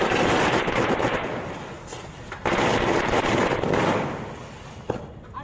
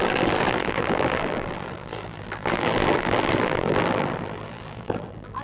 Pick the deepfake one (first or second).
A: second